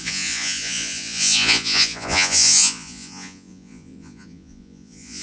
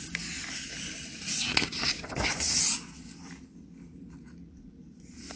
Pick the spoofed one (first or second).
first